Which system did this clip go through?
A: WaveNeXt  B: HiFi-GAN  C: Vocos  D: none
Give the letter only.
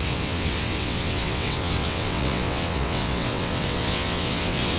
A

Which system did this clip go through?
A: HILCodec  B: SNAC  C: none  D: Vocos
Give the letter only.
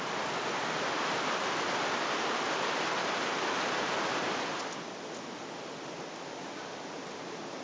C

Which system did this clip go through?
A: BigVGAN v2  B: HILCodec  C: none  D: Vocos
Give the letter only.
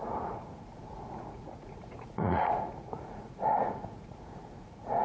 D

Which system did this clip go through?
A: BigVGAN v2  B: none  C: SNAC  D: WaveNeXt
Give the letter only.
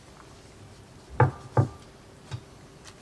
B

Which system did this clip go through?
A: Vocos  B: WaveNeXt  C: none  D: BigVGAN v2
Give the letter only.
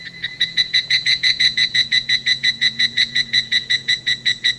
A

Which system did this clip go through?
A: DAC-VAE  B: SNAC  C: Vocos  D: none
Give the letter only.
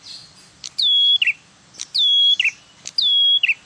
D